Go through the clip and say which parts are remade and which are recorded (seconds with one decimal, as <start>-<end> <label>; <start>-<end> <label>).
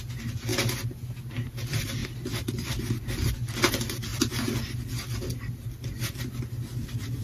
0.0-7.2 recorded